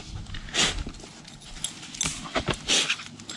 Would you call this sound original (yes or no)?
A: yes